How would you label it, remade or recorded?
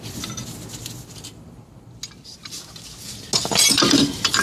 recorded